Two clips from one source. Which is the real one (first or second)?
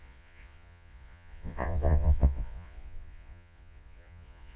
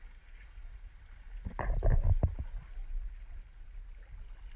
second